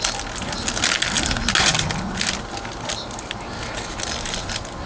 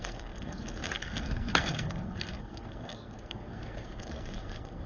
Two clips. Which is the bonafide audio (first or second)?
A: first